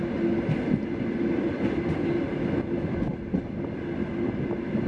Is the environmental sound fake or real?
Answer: real